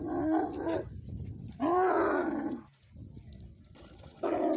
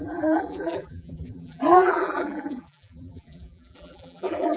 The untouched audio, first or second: first